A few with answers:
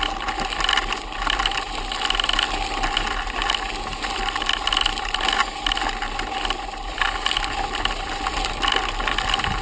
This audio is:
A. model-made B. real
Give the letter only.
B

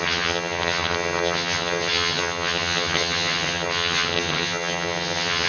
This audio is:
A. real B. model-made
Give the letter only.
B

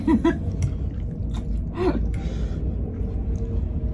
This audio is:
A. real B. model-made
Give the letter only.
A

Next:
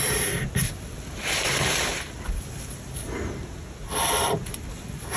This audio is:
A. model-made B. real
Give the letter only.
B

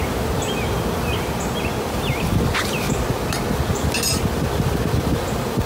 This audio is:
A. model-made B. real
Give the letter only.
B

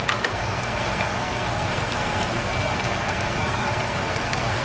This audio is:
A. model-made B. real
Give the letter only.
A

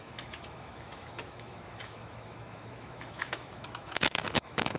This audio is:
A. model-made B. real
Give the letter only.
A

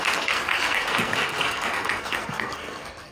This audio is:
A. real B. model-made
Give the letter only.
B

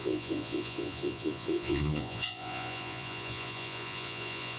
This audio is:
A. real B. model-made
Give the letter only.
B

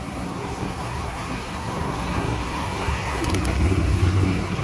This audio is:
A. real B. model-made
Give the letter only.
B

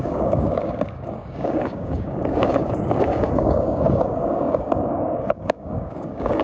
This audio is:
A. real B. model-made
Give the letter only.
B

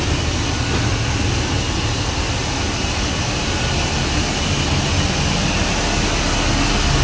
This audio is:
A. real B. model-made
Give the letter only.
A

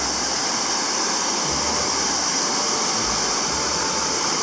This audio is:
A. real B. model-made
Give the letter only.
A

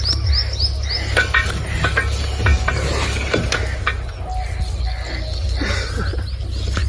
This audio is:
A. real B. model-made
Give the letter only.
A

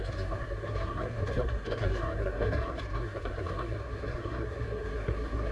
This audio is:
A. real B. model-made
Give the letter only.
B